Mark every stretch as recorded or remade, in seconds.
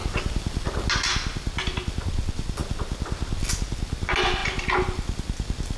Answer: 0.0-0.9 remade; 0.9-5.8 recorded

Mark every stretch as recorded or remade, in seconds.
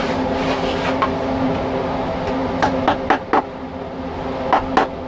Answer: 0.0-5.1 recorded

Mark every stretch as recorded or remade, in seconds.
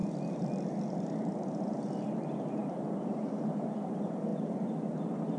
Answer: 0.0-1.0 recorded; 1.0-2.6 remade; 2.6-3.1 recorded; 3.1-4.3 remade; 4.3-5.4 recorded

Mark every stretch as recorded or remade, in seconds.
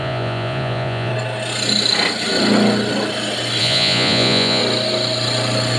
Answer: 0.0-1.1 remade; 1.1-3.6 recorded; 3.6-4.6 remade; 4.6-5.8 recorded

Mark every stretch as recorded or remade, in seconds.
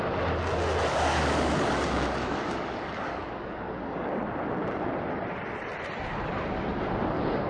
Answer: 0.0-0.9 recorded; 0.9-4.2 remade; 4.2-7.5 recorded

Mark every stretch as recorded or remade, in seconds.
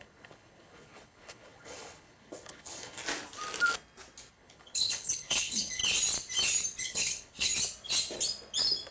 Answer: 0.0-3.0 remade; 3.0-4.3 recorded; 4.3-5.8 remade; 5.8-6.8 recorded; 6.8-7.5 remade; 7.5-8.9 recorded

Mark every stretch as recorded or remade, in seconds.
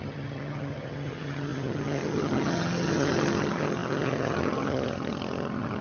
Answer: 0.0-5.8 remade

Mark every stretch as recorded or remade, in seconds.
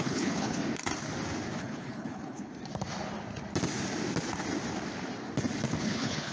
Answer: 0.0-0.6 remade; 0.6-1.6 recorded; 1.6-2.5 remade; 2.5-5.8 recorded; 5.8-6.3 remade